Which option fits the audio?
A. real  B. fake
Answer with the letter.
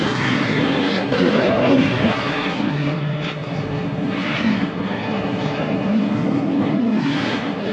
B